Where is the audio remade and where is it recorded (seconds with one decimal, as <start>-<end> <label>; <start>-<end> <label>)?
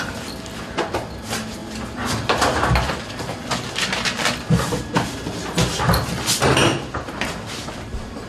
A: 0.0-8.3 recorded